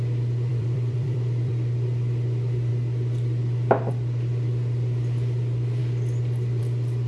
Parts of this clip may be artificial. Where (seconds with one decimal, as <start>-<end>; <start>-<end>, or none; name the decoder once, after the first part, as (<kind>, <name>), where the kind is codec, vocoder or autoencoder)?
0.5-1.5 (vocoder, BigVGAN v2)